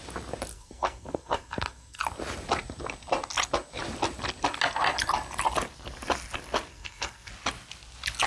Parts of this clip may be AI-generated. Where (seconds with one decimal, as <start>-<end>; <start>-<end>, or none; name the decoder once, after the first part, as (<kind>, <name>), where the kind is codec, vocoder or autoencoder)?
0.5-2.0 (codec, SNAC); 6.7-7.3